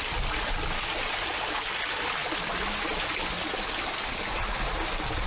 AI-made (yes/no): no